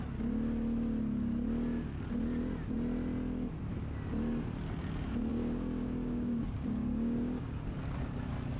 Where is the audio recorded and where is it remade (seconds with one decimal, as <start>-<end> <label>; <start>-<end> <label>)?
0.0-5.3 recorded; 5.3-7.7 remade; 7.7-8.6 recorded